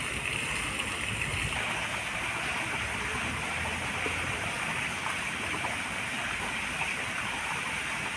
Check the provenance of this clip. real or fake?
real